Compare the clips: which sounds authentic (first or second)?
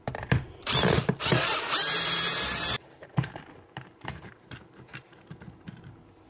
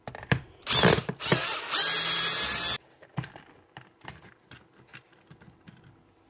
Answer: second